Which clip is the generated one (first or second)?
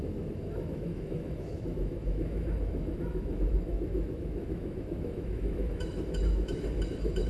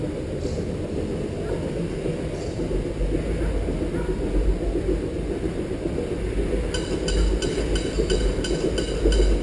first